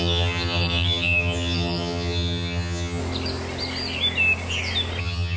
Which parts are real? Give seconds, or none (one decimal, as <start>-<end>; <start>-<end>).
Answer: 3.0-5.0